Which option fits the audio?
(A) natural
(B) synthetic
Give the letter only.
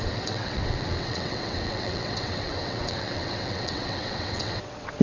B